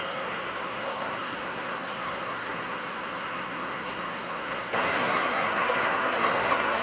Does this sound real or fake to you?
fake